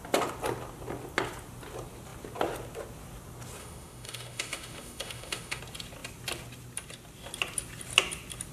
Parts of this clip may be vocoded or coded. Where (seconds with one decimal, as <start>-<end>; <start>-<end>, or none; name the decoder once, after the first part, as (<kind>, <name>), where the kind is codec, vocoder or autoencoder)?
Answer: 3.6-5.6 (autoencoder, DAC-VAE)